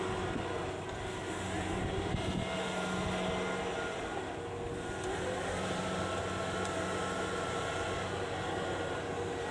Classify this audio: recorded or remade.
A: recorded